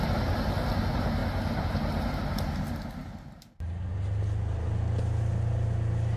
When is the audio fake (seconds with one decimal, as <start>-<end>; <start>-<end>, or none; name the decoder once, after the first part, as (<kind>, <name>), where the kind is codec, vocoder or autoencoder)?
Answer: 3.0-3.9 (vocoder, BigVGAN v2)

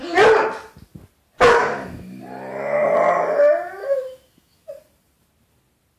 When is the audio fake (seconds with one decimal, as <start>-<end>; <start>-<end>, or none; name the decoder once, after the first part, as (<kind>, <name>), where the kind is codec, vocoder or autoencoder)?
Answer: 1.6-2.2 (autoencoder, DAC-VAE); 3.8-4.7

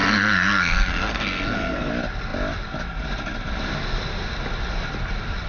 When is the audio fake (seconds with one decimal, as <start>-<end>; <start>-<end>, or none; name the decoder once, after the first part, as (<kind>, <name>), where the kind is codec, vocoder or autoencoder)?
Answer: 0.0-1.9 (codec, SNAC)

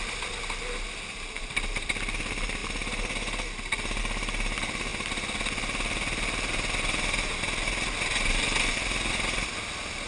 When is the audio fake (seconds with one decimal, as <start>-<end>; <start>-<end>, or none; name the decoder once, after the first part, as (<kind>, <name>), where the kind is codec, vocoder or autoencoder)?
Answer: none

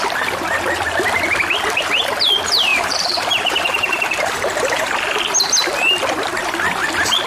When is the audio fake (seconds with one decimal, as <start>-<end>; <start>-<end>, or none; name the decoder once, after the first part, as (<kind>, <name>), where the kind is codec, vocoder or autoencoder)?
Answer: 2.7-5.2 (vocoder, BigVGAN v2)